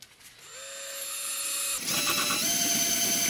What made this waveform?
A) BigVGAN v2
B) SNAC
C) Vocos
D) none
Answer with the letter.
D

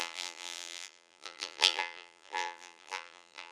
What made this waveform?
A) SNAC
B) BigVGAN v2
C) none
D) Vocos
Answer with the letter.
B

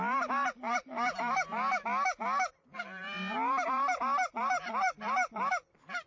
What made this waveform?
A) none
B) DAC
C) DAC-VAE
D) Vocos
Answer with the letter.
A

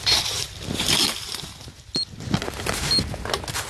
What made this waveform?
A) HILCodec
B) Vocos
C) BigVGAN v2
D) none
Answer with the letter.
D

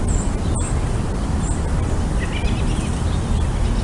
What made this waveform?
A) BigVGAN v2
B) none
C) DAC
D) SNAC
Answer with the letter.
B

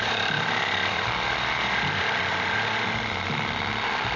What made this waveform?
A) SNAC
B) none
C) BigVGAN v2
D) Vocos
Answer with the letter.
C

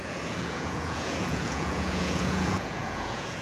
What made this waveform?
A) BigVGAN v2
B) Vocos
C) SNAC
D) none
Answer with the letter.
B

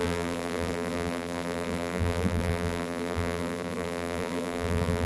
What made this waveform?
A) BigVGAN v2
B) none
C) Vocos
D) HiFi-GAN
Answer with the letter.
A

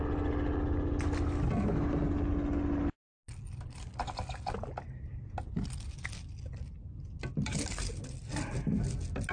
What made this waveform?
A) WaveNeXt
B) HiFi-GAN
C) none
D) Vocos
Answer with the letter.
C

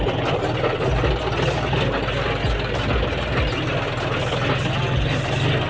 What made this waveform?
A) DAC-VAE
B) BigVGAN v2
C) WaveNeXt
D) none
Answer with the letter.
D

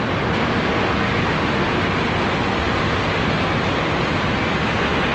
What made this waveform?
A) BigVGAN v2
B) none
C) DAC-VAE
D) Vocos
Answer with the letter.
B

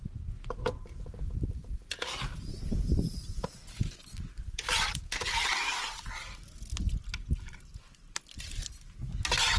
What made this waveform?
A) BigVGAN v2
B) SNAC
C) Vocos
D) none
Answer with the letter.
D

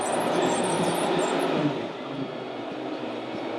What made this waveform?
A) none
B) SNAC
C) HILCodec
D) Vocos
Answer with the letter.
A